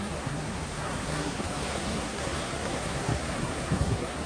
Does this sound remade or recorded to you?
remade